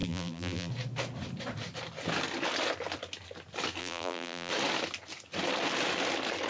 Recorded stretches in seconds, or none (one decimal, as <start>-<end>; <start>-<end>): 0.7-3.8; 4.5-6.5